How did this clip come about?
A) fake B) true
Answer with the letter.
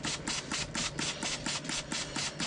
B